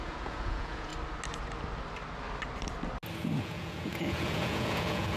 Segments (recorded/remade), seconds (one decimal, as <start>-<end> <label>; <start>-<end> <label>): 0.0-0.9 remade; 0.9-3.4 recorded; 3.4-5.2 remade